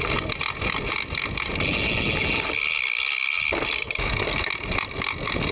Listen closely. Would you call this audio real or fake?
real